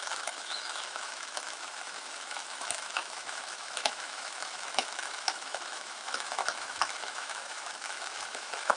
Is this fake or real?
fake